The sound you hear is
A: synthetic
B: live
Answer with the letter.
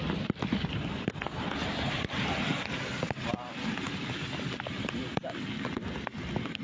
B